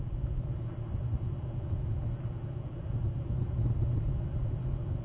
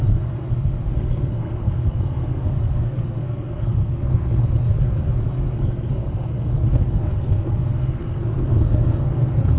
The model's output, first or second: second